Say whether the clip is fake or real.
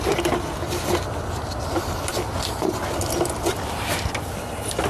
real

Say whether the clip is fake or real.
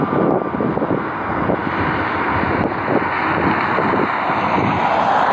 real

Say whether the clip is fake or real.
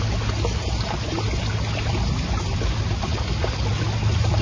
real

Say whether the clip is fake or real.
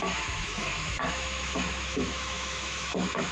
fake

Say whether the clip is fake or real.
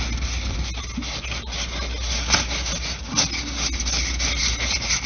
real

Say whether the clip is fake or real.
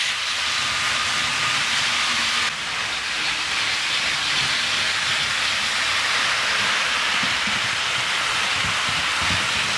real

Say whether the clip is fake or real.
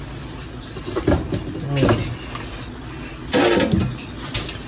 real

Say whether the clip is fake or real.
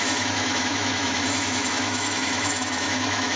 fake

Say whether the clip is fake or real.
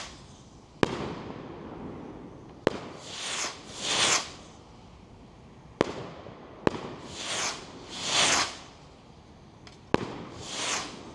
real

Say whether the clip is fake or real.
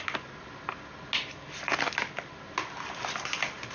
real